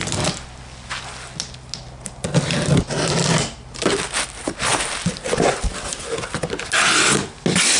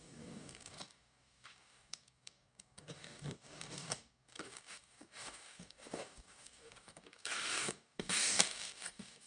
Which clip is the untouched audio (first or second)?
first